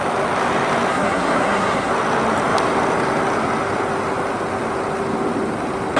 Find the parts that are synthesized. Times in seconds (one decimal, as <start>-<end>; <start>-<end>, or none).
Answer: 0.9-1.9